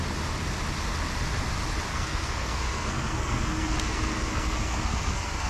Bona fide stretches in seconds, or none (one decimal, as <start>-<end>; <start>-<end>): 0.0-1.9